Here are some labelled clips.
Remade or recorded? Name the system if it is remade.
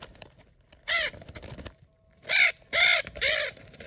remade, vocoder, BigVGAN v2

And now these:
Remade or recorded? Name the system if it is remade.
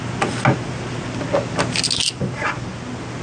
recorded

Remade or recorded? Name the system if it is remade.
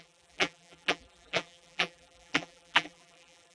remade, vocoder, BigVGAN v2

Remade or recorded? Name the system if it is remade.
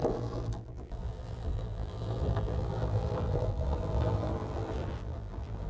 remade, vocoder, BigVGAN v2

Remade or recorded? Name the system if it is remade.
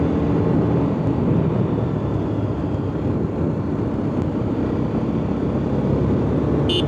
recorded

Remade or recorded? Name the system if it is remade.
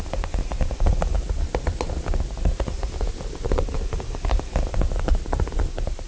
recorded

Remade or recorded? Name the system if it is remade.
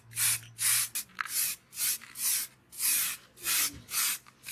recorded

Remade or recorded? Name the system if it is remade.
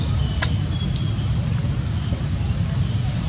recorded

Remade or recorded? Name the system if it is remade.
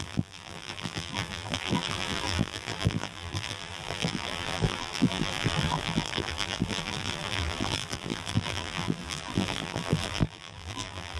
remade, vocoder, BigVGAN v2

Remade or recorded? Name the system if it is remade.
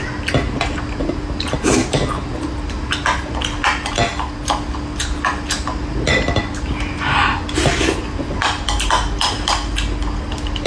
recorded